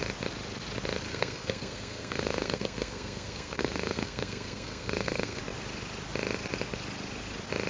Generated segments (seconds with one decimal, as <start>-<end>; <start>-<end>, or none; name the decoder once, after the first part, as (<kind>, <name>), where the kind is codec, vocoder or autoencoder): 1.1-5.4 (codec, SNAC)